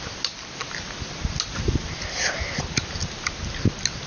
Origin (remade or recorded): recorded